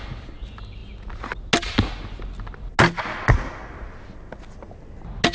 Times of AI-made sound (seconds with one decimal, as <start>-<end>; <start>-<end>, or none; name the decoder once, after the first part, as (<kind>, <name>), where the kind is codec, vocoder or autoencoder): none